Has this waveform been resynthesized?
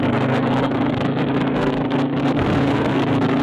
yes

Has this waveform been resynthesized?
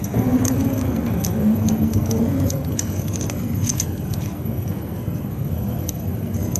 yes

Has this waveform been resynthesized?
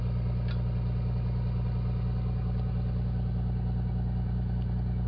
no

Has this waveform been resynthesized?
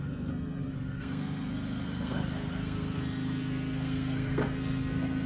yes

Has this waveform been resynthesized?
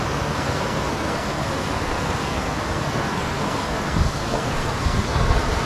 yes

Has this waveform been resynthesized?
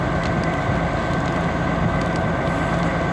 no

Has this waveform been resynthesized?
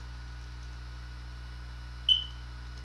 no